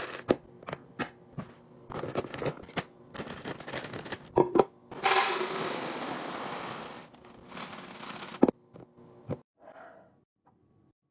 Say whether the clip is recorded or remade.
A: recorded